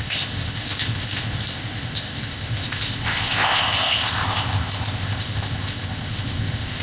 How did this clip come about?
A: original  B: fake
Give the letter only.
B